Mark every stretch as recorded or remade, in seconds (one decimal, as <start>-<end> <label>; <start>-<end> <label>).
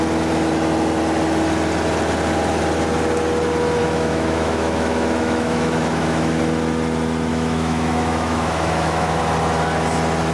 0.0-3.8 recorded; 3.8-6.4 remade; 6.4-7.3 recorded; 7.3-9.2 remade; 9.2-10.3 recorded